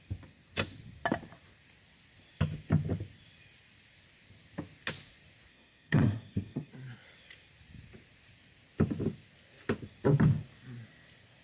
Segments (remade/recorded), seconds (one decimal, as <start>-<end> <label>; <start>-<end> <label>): 0.0-5.5 recorded; 5.5-6.7 remade; 6.7-11.4 recorded